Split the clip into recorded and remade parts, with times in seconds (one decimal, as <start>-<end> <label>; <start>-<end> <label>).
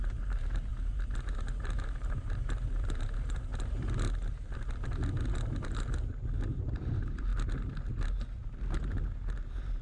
0.0-3.5 remade; 3.5-6.1 recorded; 6.1-7.3 remade; 7.3-8.7 recorded; 8.7-9.8 remade